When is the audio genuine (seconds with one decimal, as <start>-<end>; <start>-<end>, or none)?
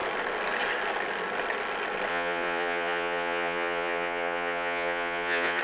0.0-2.1